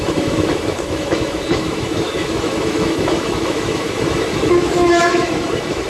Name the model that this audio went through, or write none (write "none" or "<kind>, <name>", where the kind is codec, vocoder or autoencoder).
autoencoder, DAC-VAE